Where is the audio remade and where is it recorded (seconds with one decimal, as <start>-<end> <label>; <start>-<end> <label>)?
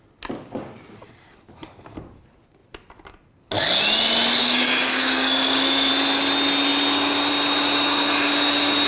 0.0-4.4 recorded; 4.4-5.9 remade; 5.9-8.9 recorded